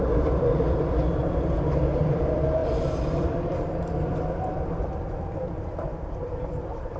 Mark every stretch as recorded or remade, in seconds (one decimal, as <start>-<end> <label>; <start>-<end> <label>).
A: 0.0-1.2 remade; 1.2-2.0 recorded; 2.0-7.0 remade